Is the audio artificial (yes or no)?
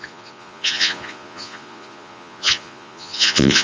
yes